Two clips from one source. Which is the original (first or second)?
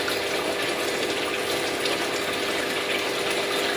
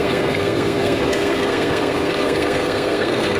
first